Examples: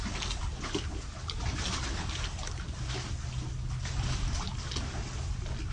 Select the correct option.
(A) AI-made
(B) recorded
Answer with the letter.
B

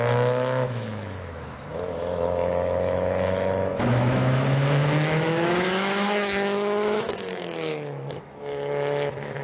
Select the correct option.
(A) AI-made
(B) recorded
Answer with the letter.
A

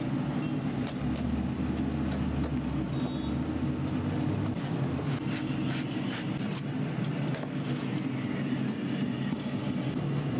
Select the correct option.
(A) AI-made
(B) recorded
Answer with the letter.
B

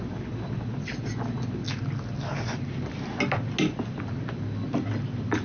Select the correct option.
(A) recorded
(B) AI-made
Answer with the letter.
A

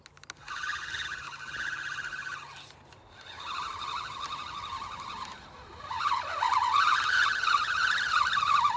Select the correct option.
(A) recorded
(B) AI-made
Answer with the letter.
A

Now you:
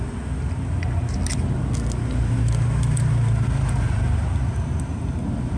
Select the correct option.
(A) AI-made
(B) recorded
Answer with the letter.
B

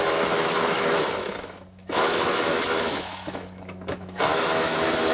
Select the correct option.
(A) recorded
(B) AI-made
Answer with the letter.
B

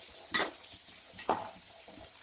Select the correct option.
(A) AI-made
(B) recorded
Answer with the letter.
A